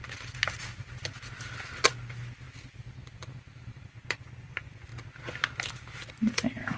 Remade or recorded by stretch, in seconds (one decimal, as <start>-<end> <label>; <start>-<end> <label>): 0.0-4.1 recorded; 4.1-4.9 remade; 4.9-6.1 recorded; 6.1-6.8 remade